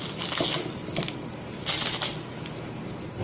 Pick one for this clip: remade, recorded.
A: recorded